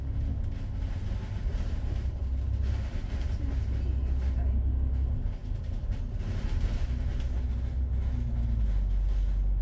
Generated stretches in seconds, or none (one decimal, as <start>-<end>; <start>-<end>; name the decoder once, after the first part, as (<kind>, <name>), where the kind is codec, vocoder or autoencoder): 1.5-2.2 (vocoder, BigVGAN v2); 5.4-6.0